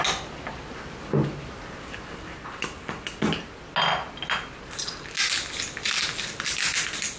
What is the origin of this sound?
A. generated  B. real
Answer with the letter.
B